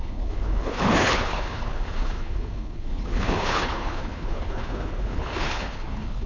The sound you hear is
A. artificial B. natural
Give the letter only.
A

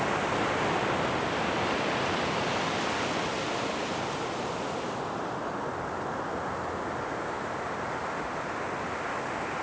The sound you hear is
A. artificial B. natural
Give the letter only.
B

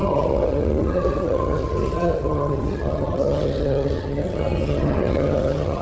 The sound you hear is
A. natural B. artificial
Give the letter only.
B